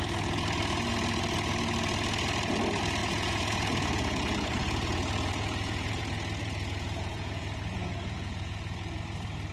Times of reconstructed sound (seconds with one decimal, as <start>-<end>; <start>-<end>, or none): 3.0-6.0; 6.4-9.0

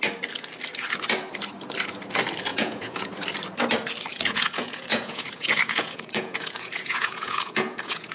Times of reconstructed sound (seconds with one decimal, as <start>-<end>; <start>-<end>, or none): 2.5-3.1; 4.1-8.1

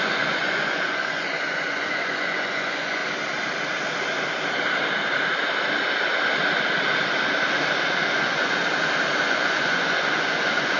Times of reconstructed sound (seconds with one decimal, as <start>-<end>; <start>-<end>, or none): 0.0-3.0; 8.1-8.6; 9.2-10.8